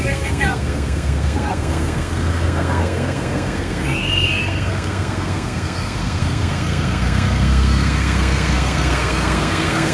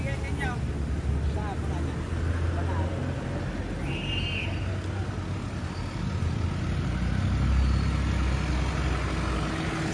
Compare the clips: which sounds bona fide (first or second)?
second